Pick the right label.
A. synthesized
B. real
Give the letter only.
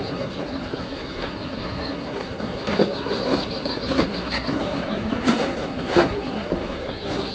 A